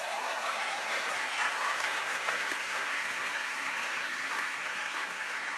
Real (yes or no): no